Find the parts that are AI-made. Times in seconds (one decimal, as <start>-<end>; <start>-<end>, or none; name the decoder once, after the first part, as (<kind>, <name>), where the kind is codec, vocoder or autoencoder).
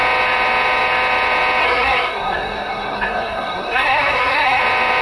1.6-4.6 (codec, SNAC)